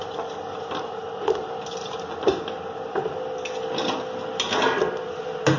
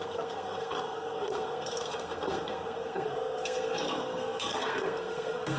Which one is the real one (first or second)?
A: first